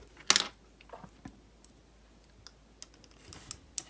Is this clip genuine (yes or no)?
yes